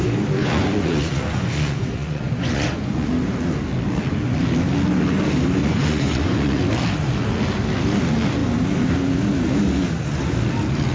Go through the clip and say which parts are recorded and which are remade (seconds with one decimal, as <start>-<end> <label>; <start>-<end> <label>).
0.0-0.4 recorded; 0.4-3.1 remade; 3.1-5.6 recorded; 5.6-6.6 remade; 6.6-10.9 recorded